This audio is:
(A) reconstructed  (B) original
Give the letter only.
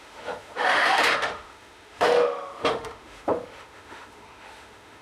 A